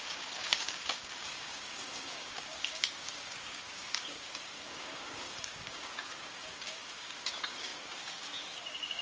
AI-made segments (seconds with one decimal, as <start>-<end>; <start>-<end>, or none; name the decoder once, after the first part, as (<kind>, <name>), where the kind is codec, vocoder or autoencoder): 0.0-9.0 (codec, DAC)